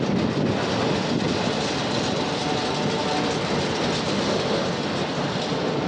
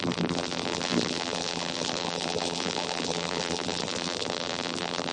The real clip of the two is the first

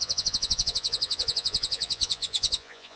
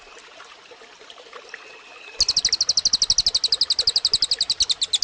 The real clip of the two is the second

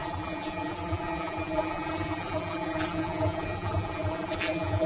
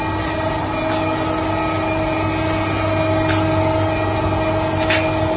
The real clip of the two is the second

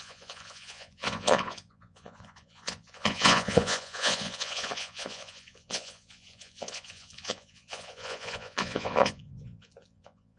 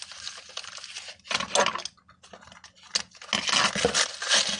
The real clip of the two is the second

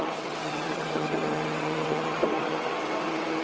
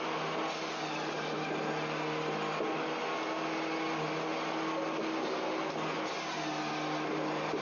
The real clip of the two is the second